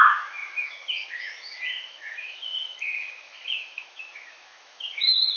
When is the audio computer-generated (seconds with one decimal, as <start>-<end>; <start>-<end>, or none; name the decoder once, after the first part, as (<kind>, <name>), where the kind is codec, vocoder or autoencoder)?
0.0-5.4 (autoencoder, DAC-VAE)